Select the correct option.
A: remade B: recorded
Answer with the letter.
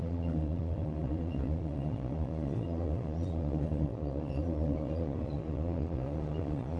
A